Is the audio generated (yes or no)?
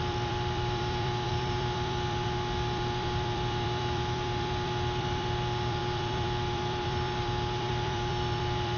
yes